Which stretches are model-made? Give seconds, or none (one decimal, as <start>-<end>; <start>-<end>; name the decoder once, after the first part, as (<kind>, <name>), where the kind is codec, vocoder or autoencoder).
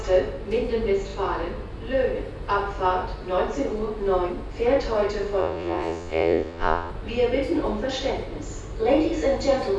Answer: 5.4-6.9 (vocoder, Vocos)